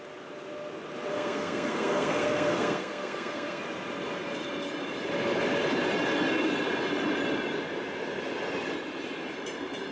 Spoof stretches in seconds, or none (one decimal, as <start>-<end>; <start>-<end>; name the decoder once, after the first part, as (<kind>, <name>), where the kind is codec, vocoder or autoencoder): 1.1-3.6 (codec, SNAC)